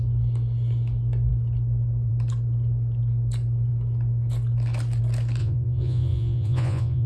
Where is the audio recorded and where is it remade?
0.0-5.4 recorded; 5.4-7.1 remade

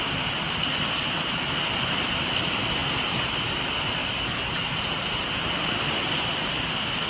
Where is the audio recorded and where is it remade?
0.0-4.0 recorded; 4.0-4.7 remade; 4.7-7.1 recorded

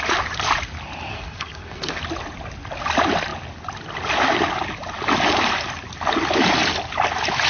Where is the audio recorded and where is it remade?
0.0-1.1 recorded; 1.1-2.0 remade; 2.0-7.5 recorded

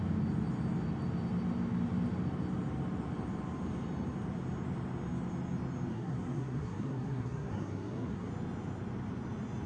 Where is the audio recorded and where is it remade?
0.0-5.9 recorded; 5.9-8.3 remade; 8.3-9.7 recorded

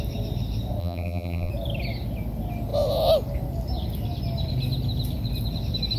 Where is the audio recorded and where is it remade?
0.0-0.8 recorded; 0.8-1.5 remade; 1.5-6.0 recorded

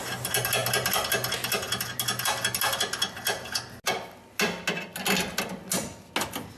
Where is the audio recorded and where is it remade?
0.0-6.6 recorded

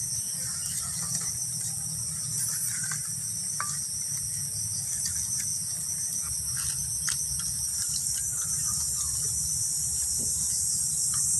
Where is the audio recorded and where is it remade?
0.0-11.4 recorded